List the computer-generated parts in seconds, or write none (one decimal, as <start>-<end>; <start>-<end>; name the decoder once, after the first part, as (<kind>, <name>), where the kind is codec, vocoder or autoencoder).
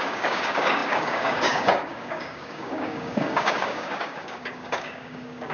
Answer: 0.0-5.5 (codec, DAC)